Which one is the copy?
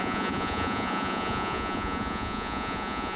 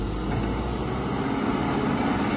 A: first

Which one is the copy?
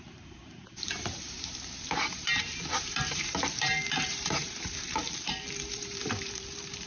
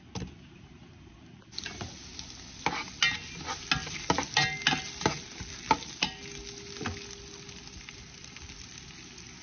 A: first